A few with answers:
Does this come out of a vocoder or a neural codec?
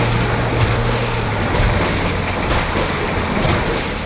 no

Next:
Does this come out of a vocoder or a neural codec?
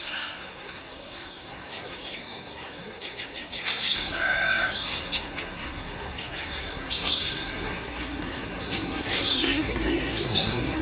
yes